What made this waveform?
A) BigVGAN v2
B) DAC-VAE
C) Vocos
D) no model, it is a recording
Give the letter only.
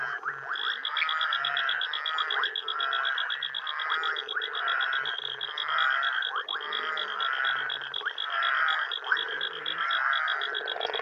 D